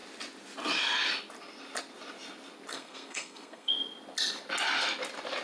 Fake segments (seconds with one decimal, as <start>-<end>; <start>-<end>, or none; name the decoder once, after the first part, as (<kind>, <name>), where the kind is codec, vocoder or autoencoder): 2.7-3.7 (codec, SNAC)